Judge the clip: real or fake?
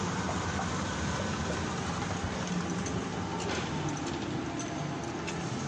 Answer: real